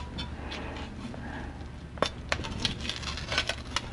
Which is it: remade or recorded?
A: recorded